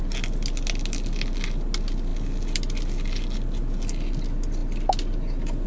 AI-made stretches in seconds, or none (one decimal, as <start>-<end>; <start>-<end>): none